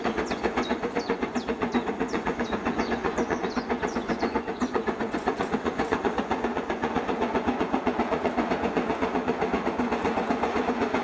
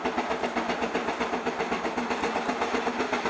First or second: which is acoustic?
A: second